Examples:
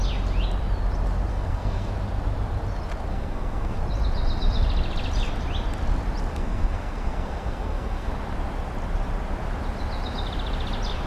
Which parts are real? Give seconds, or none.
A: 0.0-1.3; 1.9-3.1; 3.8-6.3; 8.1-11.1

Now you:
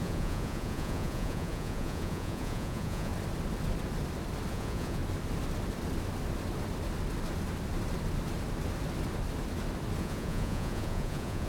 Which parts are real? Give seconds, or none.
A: 3.1-4.5; 5.0-10.0

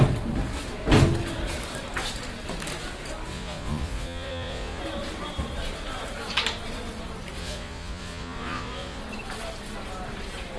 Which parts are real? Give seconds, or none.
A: 0.0-3.3; 4.8-7.4; 9.0-10.6

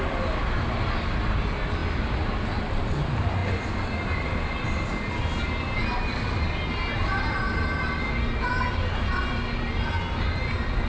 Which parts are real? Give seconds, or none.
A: 0.0-10.9

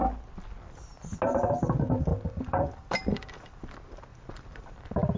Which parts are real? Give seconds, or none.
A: 0.0-2.1; 3.6-4.1

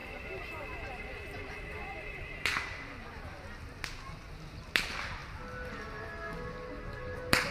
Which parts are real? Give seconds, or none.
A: 0.0-7.5

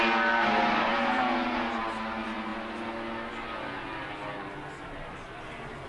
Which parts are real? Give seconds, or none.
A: 0.0-0.9; 1.8-5.9

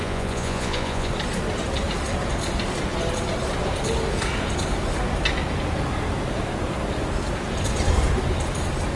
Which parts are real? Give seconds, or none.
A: 1.1-9.0